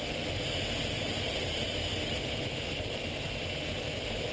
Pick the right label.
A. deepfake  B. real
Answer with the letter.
B